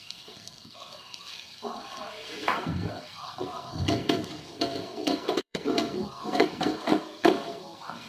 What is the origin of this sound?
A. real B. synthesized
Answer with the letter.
B